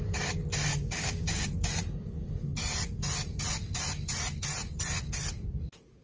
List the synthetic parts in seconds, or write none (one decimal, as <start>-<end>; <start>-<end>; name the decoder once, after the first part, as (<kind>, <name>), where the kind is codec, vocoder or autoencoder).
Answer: 0.7-1.7 (codec, DAC)